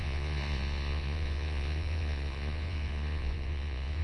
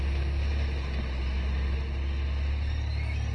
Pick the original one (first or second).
second